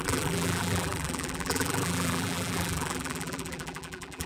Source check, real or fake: fake